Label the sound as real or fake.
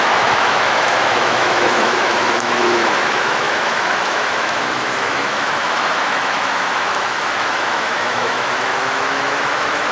fake